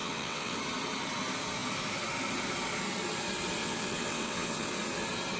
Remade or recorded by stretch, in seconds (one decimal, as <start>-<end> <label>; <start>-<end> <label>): 0.0-0.6 remade; 0.6-3.6 recorded; 3.6-4.7 remade; 4.7-5.4 recorded